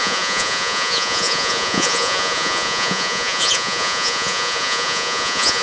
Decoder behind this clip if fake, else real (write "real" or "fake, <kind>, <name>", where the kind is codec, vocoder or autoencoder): fake, vocoder, Vocos